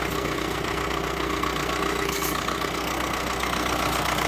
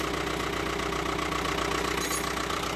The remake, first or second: first